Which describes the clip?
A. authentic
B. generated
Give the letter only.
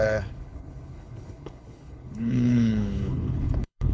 B